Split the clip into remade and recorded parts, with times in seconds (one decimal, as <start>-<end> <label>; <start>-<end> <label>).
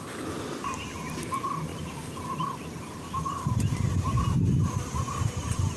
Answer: 0.0-5.8 recorded